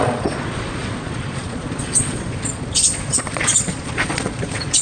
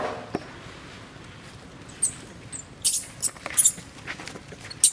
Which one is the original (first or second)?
second